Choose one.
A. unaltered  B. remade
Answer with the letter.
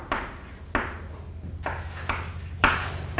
A